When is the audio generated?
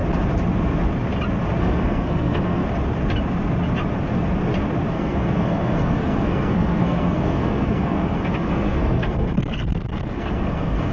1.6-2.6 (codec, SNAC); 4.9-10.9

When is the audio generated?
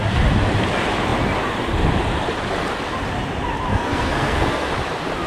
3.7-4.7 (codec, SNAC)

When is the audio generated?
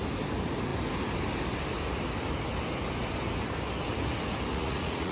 4.5-5.1 (vocoder, Vocos)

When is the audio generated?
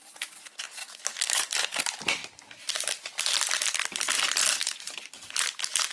0.8-1.4 (autoencoder, DAC-VAE)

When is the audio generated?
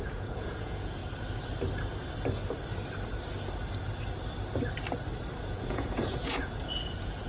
0.0-1.0 (vocoder, Vocos); 5.4-7.3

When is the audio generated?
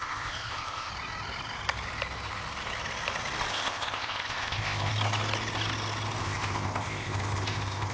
0.0-0.9 (codec, ZipCodec); 3.5-4.9; 6.2-7.9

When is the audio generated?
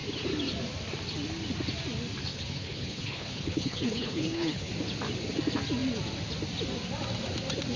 2.3-4.7 (codec, HILCodec)